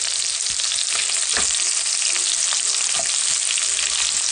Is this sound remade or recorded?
recorded